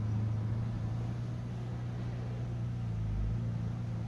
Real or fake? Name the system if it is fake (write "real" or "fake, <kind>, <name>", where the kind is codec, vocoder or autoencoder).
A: real